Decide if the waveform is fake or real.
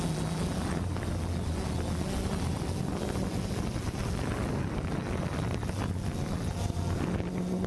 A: real